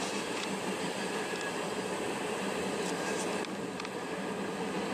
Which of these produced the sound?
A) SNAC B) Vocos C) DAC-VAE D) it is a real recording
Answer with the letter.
D